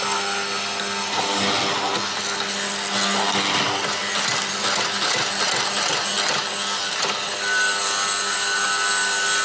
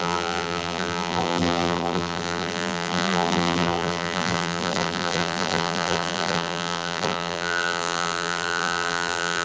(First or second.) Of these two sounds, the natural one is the first